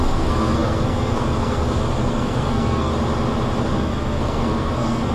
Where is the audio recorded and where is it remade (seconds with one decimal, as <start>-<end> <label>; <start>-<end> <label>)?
0.0-2.9 remade; 2.9-3.6 recorded; 3.6-5.1 remade